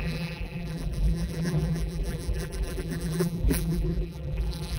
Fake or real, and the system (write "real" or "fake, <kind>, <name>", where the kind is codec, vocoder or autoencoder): fake, vocoder, BigVGAN v2